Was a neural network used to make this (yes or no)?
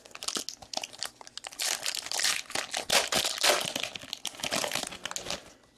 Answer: no